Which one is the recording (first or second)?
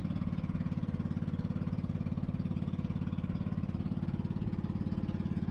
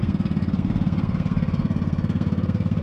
first